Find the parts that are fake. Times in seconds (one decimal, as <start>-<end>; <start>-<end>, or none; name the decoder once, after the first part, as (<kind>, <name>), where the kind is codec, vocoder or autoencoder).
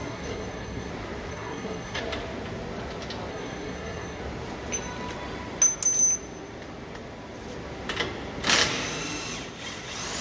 0.0-0.9 (codec, SNAC); 1.3-2.0; 3.3-4.2